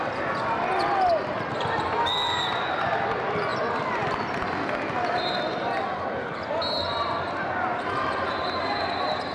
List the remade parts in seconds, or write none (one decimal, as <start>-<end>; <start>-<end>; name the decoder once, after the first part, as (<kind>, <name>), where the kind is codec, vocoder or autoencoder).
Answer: none